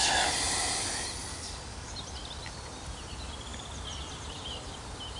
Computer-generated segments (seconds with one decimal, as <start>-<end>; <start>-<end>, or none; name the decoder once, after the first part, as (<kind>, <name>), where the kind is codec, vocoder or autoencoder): 1.3-1.9 (codec, DAC)

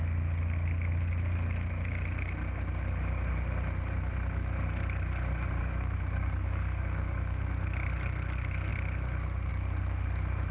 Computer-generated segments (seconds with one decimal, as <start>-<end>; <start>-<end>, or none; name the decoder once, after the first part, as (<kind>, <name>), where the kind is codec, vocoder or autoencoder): 5.6-7.4 (codec, DAC)

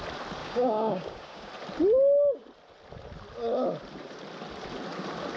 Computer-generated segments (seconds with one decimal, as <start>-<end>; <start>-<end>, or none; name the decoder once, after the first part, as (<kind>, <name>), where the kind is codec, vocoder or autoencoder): 0.4-1.5 (codec, DAC)

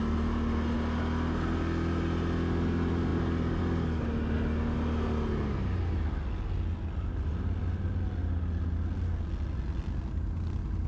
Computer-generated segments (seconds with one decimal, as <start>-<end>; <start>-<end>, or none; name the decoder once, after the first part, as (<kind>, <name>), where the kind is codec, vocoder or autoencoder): none

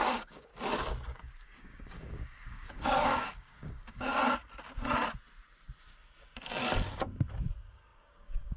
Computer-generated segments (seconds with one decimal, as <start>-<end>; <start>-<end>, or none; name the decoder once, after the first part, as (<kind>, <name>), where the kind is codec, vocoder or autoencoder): 0.0-0.5 (codec, DAC); 1.0-4.1; 7.5-8.6